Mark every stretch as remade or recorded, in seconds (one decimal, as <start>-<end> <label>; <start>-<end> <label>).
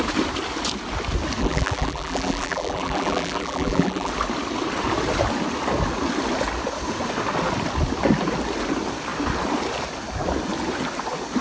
0.0-1.4 recorded; 1.4-4.1 remade; 4.1-11.4 recorded